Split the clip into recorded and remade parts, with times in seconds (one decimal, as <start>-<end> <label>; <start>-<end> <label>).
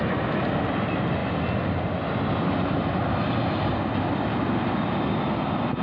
0.0-5.8 recorded